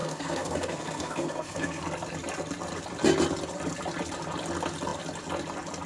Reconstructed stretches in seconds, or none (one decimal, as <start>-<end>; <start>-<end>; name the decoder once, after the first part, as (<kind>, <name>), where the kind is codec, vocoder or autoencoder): 0.0-1.8 (codec, SNAC)